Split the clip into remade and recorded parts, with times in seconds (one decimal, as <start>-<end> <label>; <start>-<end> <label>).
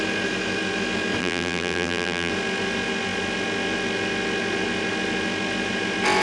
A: 0.0-1.2 recorded; 1.2-2.3 remade; 2.3-6.2 recorded